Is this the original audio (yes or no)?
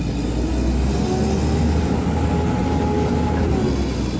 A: yes